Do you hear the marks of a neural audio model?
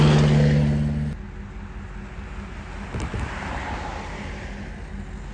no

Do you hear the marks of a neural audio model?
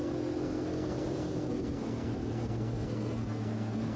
yes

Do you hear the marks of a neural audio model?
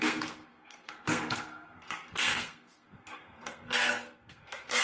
yes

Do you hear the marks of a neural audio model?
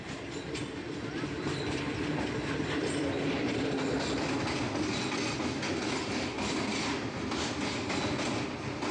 no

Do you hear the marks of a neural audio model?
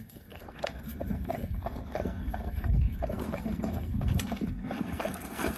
yes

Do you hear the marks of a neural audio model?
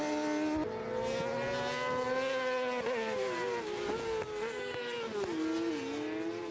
no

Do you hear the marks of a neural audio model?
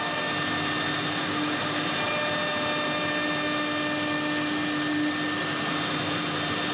no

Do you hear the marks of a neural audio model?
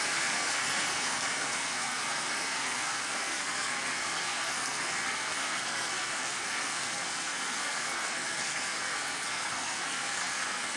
yes